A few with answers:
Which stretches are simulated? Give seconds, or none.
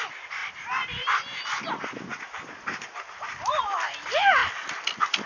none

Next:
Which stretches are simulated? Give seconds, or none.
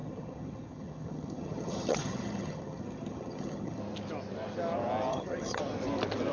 0.0-3.8; 5.1-5.6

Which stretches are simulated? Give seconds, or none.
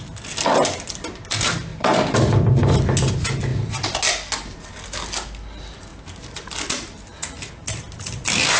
none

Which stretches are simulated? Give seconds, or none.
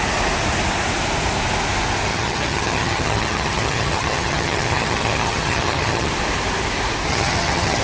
2.1-6.1; 7.1-7.8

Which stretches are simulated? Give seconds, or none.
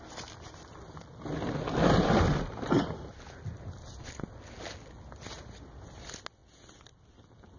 none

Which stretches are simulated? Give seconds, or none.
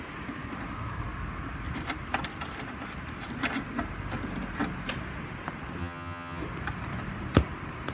5.8-6.4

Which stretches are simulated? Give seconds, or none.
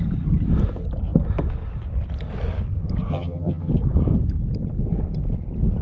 3.1-3.7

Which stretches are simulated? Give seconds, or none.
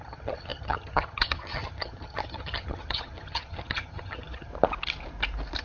0.0-4.5